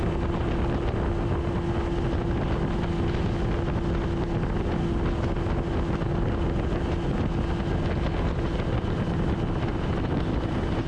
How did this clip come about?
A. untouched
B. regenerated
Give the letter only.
A